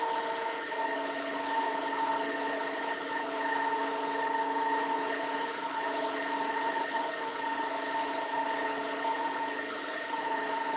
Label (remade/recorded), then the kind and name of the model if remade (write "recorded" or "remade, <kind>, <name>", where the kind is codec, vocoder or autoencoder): remade, codec, HILCodec